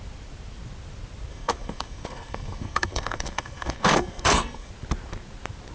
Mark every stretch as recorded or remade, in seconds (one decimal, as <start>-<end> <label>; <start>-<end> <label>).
0.0-1.3 recorded; 1.3-4.7 remade; 4.7-5.7 recorded